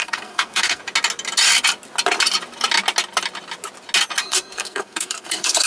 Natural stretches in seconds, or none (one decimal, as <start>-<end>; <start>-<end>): 0.8-4.2